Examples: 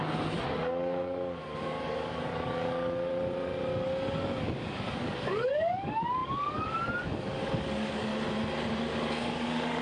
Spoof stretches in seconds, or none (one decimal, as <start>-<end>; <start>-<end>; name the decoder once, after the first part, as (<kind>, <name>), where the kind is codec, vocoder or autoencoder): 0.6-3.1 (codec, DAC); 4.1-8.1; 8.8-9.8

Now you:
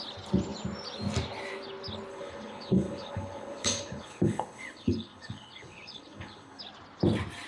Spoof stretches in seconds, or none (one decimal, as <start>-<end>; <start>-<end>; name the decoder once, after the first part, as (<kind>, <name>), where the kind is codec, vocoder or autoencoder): 2.1-6.6 (codec, HILCodec)

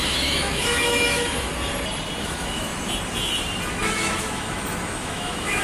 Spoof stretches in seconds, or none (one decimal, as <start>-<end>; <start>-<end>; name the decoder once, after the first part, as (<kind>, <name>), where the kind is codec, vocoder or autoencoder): 0.0-1.5 (autoencoder, DAC-VAE); 2.2-2.7; 3.7-5.6

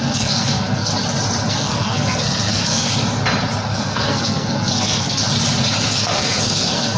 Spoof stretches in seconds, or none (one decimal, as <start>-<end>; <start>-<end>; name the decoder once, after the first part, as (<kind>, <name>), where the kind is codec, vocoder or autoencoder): 0.0-0.9 (codec, SNAC); 1.5-2.9; 3.7-5.2; 5.9-7.0

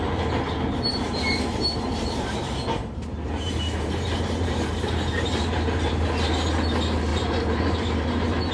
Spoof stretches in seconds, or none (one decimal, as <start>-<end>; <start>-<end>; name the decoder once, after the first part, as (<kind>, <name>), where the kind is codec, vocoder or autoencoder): 0.9-5.9 (vocoder, BigVGAN v2); 7.1-8.5